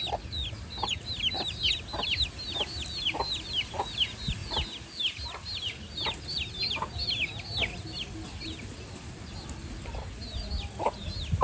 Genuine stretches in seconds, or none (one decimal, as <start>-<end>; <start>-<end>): 0.0-11.4